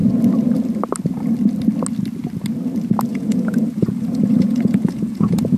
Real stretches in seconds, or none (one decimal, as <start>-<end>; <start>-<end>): 0.0-3.1